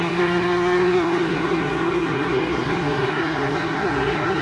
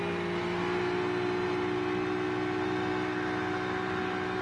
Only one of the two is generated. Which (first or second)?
first